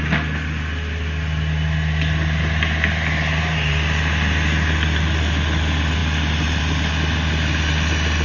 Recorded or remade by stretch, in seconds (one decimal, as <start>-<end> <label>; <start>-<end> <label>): 0.0-8.2 recorded